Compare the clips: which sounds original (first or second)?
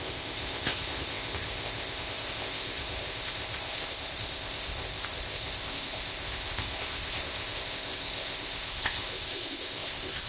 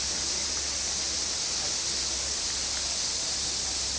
second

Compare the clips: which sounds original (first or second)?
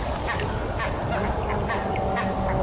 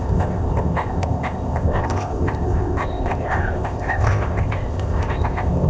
first